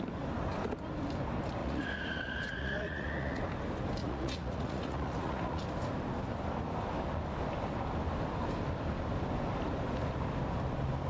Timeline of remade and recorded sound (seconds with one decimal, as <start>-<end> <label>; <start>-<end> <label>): 0.0-1.6 recorded; 1.6-3.4 remade; 3.4-4.0 recorded; 4.0-5.6 remade; 5.6-11.1 recorded